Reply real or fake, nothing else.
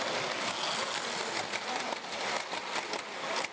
real